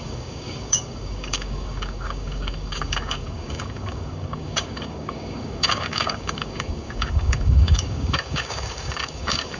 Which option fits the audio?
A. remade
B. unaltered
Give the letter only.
A